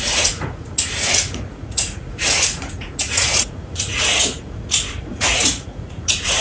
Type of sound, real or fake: fake